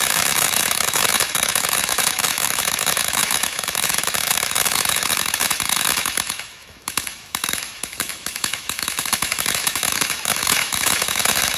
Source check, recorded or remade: remade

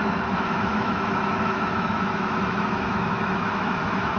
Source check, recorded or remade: remade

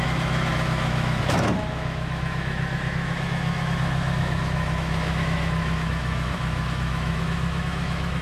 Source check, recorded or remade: remade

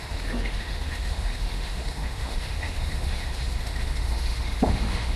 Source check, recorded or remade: remade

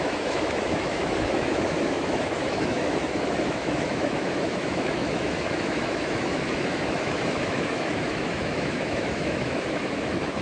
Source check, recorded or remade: remade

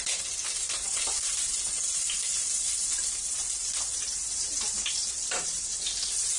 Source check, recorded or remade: recorded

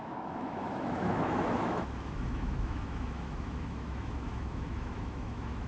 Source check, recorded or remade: remade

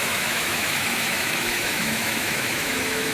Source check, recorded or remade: remade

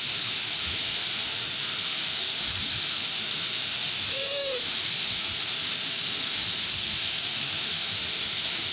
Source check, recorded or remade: remade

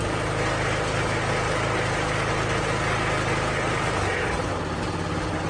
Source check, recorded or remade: recorded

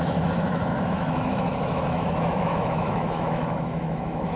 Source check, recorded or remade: remade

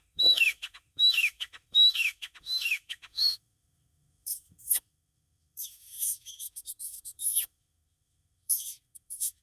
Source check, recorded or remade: remade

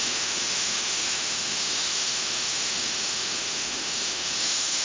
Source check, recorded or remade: remade